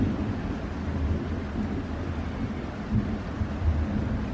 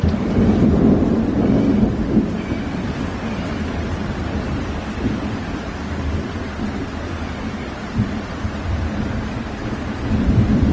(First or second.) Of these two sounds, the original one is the first